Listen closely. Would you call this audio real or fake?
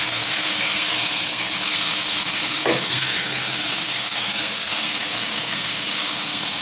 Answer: fake